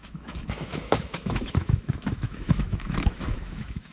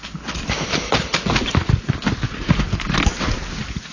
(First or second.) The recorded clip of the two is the second